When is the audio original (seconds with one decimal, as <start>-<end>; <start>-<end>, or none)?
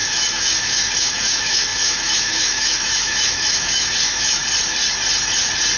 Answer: 4.4-5.8